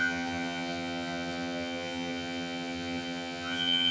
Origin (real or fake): fake